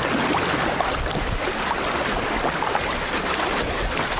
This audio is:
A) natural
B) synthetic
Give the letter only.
A